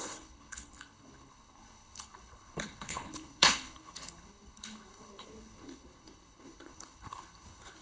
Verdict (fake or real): fake